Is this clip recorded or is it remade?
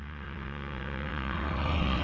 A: remade